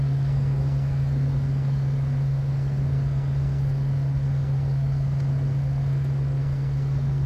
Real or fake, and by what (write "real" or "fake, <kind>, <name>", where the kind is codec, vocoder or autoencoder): fake, codec, SNAC